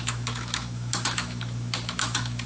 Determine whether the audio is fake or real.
fake